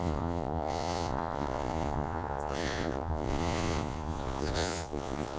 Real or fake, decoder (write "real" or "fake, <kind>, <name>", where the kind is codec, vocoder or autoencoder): fake, vocoder, Vocos